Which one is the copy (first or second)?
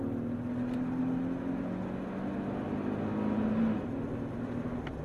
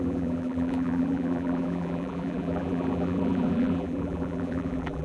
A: second